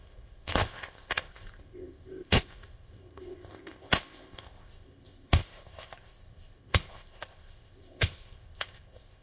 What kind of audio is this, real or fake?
fake